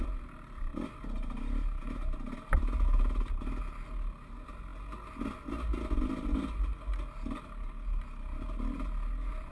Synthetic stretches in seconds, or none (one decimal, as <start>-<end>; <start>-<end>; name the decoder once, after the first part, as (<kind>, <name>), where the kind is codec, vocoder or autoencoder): none